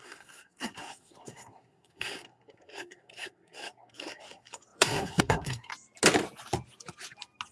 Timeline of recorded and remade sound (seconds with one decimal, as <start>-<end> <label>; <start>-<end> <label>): 0.0-5.7 remade; 5.7-7.5 recorded